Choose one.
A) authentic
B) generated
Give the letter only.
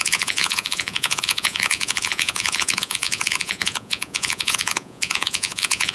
B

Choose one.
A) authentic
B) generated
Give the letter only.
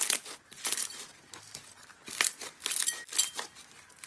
A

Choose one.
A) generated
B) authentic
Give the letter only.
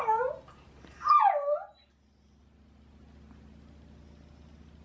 B